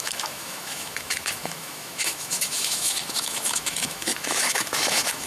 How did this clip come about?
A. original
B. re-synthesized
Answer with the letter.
B